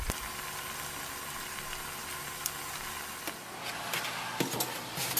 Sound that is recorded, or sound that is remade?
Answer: recorded